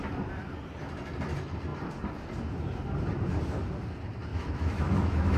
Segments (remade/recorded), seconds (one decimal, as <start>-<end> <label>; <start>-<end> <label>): 0.0-4.3 recorded; 4.3-5.4 remade